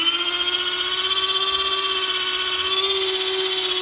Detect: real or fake real